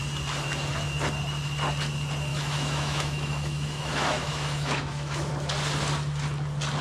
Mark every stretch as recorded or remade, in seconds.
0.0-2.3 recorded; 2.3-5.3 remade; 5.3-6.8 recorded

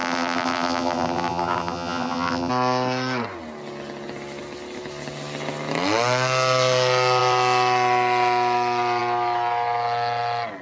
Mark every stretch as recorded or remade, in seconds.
0.0-2.5 remade; 2.5-10.6 recorded